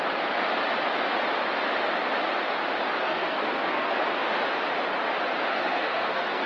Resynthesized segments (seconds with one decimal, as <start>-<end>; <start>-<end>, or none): 3.0-3.9; 5.5-6.5